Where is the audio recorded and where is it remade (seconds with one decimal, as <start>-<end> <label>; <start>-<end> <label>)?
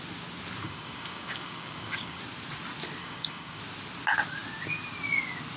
0.0-0.6 recorded; 0.6-2.2 remade; 2.2-3.0 recorded; 3.0-3.6 remade; 3.6-5.6 recorded